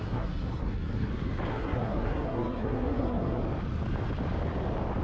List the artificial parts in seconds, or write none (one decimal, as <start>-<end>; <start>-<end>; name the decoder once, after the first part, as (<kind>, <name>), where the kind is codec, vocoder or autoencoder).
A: 0.0-1.1 (codec, SNAC); 1.5-3.4